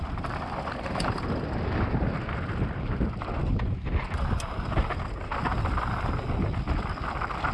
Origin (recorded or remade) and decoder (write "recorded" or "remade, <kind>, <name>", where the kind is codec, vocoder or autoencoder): recorded